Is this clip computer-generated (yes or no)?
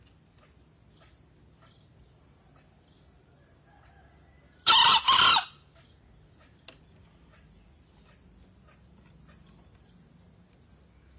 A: no